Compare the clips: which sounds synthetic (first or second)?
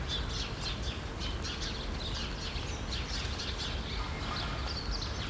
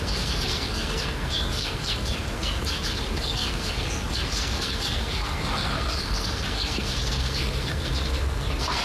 second